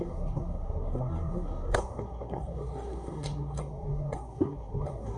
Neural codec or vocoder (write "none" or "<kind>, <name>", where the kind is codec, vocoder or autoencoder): codec, SNAC